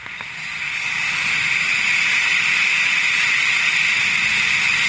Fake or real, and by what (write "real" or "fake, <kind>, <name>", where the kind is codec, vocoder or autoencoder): real